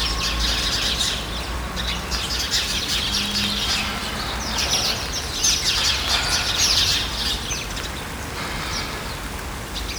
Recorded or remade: recorded